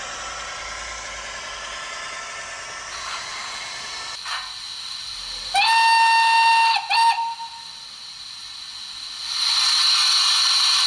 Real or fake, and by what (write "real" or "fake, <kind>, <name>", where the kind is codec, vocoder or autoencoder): real